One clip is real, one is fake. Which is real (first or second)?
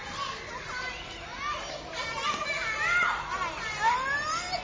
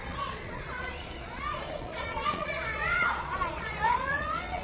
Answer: first